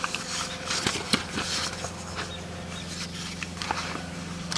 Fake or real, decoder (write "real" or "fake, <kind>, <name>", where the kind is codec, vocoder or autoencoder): real